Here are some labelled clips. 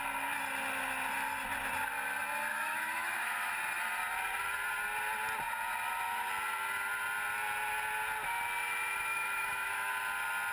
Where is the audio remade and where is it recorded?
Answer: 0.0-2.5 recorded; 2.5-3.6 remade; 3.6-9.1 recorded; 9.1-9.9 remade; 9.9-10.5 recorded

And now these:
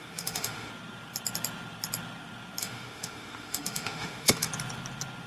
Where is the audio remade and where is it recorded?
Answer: 0.0-0.7 remade; 0.7-2.6 recorded; 2.6-4.5 remade; 4.5-5.3 recorded

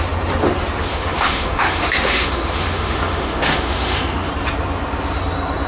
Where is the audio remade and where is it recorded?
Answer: 0.0-0.9 recorded; 0.9-4.3 remade; 4.3-5.7 recorded